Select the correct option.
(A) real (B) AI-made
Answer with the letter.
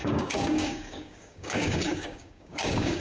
B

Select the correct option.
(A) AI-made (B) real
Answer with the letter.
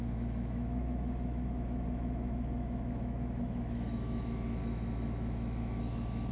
A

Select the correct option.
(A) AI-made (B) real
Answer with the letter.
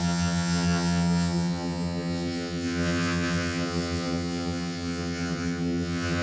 A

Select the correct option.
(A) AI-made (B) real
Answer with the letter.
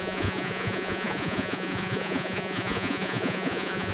A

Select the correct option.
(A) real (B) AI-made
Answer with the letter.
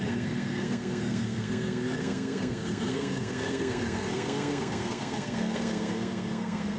B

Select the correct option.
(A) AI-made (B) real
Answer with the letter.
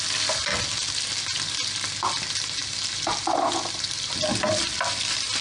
B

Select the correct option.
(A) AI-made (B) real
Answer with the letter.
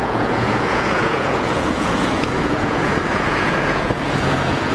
A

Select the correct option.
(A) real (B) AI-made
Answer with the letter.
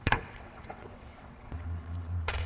B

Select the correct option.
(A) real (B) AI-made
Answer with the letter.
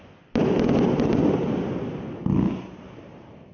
A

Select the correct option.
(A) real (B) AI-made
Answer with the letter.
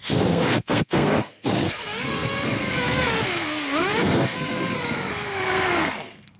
B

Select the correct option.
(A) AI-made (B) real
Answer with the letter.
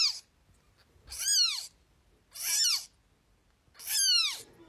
B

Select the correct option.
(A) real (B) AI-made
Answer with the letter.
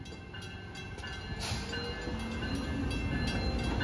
A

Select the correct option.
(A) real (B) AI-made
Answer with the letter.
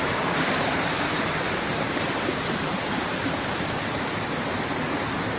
B